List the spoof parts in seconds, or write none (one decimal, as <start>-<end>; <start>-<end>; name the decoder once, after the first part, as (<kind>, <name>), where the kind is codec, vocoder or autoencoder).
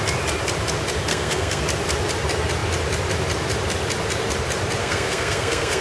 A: 1.1-1.6 (codec, SNAC); 4.8-5.8